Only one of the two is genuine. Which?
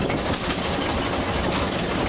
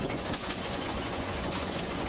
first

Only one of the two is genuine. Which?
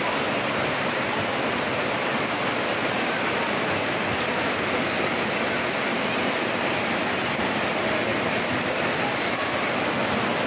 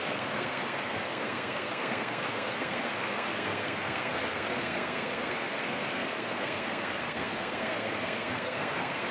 first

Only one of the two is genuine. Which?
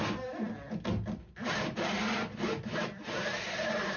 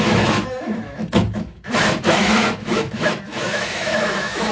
first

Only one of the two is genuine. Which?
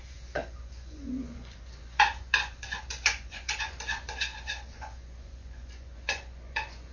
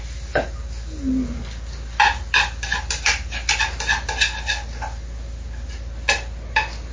second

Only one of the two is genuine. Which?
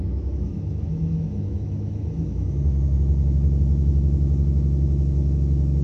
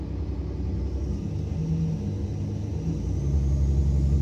second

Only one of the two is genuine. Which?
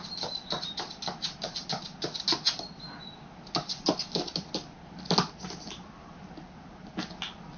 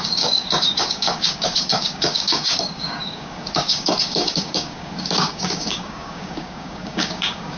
first